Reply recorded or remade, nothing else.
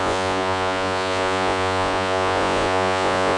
remade